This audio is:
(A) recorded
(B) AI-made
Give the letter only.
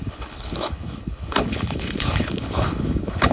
B